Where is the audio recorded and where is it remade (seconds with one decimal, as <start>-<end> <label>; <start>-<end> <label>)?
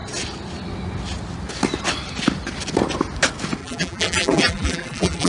0.0-3.6 recorded; 3.6-5.3 remade